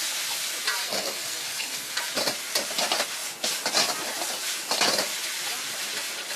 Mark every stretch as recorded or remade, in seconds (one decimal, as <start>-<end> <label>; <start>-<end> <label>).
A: 0.0-0.8 recorded; 0.8-2.0 remade; 2.0-6.4 recorded